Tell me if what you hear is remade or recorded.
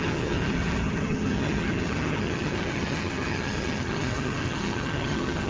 remade